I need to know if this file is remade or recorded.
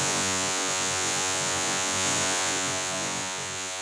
remade